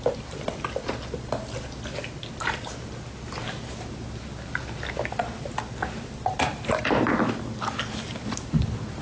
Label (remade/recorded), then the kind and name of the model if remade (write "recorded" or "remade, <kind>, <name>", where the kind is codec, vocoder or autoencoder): recorded